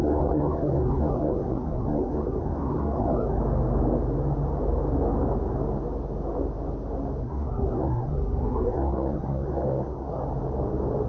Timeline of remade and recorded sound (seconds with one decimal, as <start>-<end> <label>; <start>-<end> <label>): 0.0-3.4 remade; 3.4-7.2 recorded; 7.2-10.2 remade; 10.2-11.1 recorded